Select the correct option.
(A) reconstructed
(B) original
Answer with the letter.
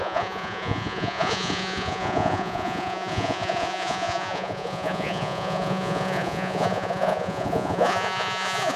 A